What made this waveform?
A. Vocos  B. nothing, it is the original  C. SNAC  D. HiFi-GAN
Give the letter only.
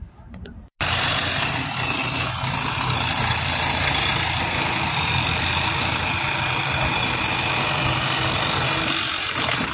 B